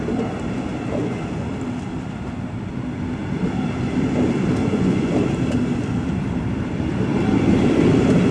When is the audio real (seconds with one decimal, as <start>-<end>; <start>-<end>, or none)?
0.0-1.0; 1.5-4.6; 5.1-8.3